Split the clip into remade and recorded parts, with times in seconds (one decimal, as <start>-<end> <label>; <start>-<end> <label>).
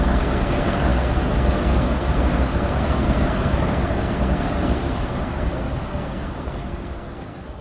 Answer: 0.0-7.6 remade